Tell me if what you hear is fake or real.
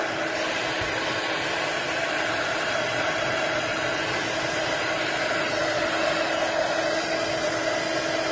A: real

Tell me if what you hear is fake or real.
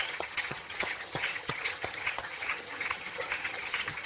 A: fake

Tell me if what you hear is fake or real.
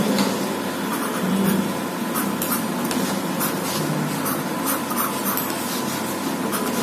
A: real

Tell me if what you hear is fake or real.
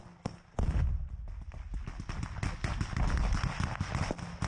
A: real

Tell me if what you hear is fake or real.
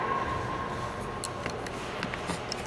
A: real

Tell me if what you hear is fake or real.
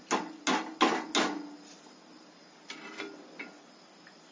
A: real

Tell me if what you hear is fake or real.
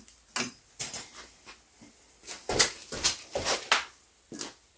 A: real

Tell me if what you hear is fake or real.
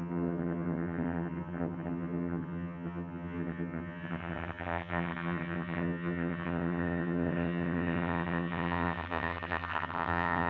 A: fake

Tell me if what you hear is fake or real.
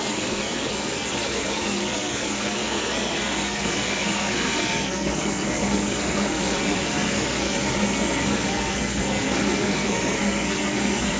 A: fake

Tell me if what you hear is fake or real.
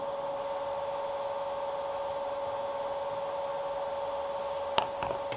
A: real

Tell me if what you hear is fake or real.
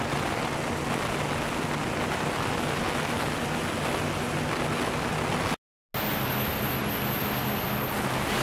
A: real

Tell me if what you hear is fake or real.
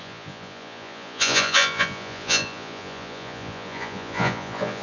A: fake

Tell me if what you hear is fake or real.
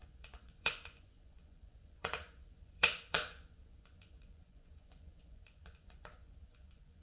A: fake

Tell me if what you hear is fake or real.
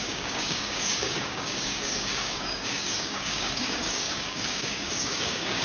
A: fake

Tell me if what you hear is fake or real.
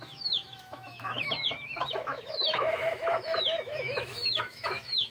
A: fake